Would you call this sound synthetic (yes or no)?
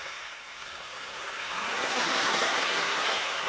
yes